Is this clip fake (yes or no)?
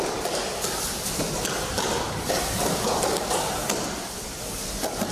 no